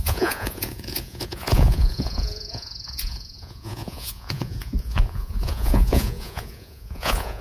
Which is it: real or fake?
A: fake